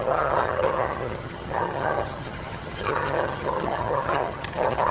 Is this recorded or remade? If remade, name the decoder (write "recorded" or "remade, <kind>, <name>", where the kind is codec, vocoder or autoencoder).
remade, vocoder, HiFi-GAN